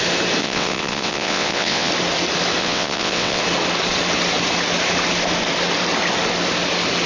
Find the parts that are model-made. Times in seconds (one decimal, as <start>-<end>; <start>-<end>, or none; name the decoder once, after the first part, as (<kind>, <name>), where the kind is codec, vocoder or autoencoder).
0.4-1.9 (vocoder, WaveNeXt); 2.6-3.4